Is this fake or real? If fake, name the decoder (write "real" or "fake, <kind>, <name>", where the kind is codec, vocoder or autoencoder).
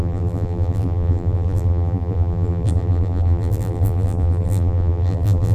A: fake, vocoder, BigVGAN v2